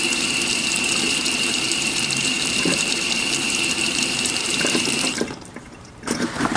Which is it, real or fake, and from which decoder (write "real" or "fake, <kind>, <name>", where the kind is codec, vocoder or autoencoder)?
fake, vocoder, BigVGAN v2